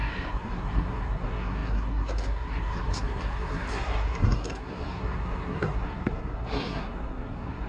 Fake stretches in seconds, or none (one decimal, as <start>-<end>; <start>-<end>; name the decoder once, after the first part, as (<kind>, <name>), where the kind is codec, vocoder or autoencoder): 0.0-7.7 (codec, SNAC)